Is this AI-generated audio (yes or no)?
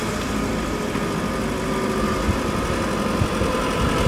no